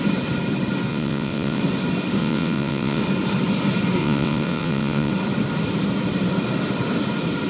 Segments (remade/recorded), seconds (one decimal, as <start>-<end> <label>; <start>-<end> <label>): 0.0-0.9 recorded; 0.9-1.6 remade; 1.6-2.2 recorded; 2.2-3.0 remade; 3.0-4.0 recorded; 4.0-5.1 remade; 5.1-7.5 recorded